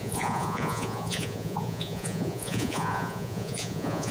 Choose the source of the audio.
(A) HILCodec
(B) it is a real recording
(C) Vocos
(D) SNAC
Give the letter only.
C